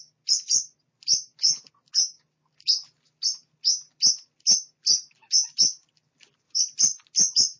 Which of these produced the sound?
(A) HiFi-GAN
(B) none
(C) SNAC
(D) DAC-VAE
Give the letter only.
B